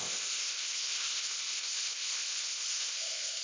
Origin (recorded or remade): remade